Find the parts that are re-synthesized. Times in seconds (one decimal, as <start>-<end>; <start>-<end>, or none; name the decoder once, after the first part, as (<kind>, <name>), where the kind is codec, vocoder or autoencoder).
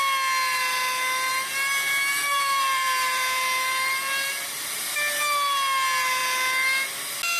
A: 1.3-5.2 (vocoder, BigVGAN v2)